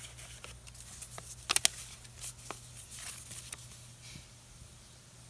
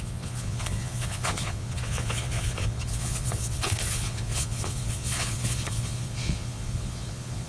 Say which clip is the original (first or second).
first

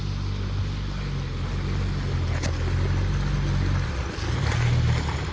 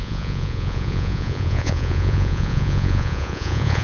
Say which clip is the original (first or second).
first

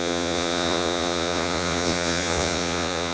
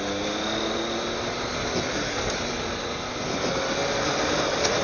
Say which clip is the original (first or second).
second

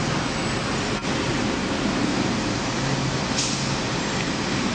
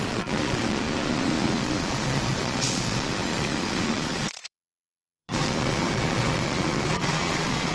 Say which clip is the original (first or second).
first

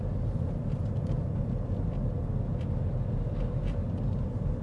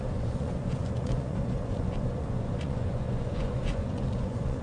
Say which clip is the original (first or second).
first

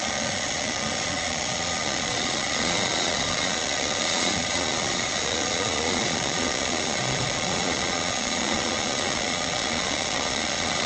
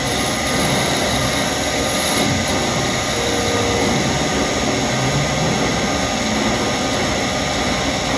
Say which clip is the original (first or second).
second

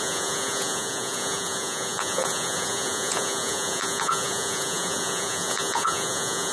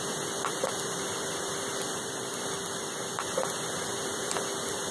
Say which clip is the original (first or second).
second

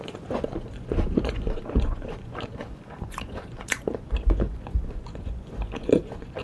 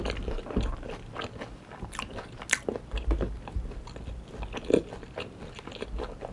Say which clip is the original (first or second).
second